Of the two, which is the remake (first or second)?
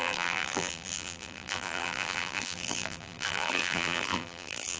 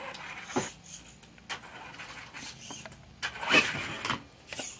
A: first